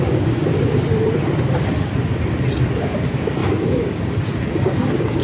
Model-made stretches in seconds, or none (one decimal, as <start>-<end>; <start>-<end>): 0.0-0.5; 2.8-5.2